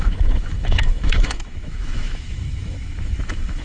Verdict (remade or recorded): remade